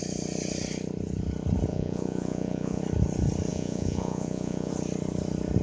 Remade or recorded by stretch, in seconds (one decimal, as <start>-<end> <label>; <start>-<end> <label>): 0.0-1.7 recorded; 1.7-2.8 remade; 2.8-3.5 recorded; 3.5-4.7 remade; 4.7-5.6 recorded